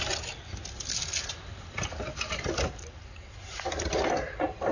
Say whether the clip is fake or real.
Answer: real